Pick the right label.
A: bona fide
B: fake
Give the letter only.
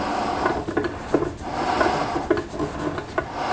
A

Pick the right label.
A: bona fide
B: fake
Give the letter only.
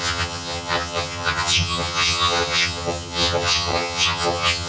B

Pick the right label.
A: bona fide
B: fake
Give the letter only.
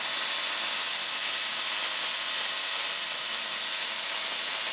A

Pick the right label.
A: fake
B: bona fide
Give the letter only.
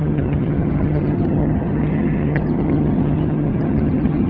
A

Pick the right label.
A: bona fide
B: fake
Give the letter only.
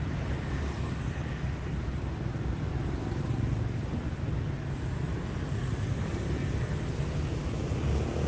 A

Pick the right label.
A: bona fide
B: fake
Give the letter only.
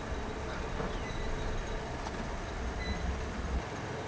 A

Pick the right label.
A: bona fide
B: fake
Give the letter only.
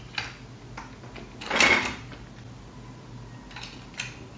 A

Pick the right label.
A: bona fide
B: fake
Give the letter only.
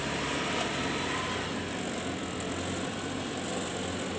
A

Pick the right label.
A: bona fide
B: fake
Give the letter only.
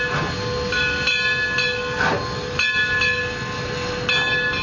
A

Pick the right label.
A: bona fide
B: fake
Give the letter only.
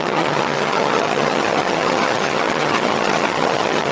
B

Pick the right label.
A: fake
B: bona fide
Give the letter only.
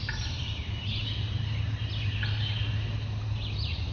B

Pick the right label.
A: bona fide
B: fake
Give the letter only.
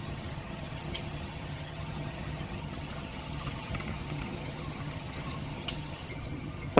B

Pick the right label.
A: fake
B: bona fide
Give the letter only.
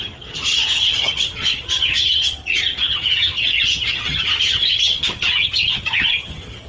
A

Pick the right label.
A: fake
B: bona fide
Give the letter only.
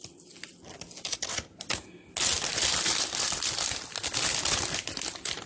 B